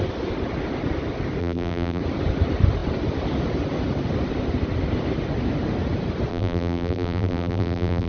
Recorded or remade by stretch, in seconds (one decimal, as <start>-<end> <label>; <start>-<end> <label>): 0.0-1.4 recorded; 1.4-2.0 remade; 2.0-6.3 recorded; 6.3-8.1 remade